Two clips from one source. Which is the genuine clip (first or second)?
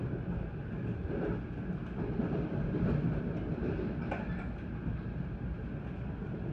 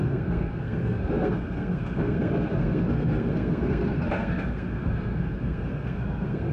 first